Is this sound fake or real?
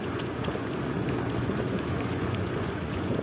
fake